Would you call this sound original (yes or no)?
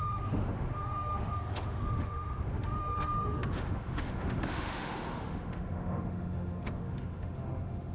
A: no